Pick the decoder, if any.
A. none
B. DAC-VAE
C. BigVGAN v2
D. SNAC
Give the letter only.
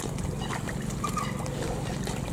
A